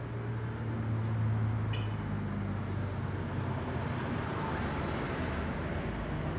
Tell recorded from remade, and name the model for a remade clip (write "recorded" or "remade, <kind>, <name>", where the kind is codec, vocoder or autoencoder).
recorded